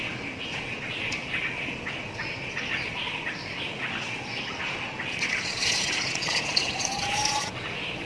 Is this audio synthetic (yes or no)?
yes